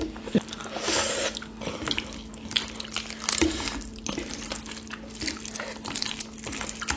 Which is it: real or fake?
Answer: real